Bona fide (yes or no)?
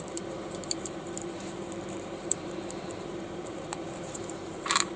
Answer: no